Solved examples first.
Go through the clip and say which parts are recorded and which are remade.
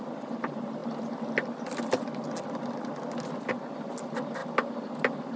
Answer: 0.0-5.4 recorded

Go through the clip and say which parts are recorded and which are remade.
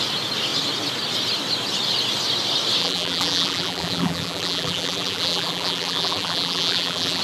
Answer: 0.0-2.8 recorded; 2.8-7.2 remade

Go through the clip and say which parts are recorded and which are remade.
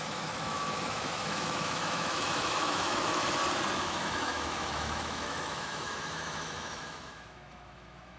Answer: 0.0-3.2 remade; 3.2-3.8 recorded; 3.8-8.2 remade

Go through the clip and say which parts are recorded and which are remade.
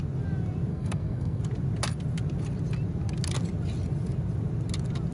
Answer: 0.0-0.7 recorded; 0.7-1.4 remade; 1.4-5.1 recorded